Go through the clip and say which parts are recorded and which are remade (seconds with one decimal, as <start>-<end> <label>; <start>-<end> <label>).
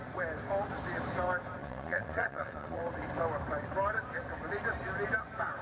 0.0-1.6 recorded; 1.6-2.8 remade; 2.8-5.6 recorded